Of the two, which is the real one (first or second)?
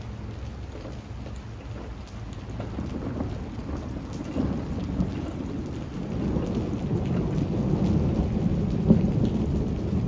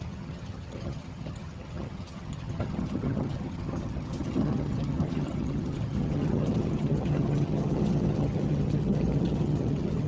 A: first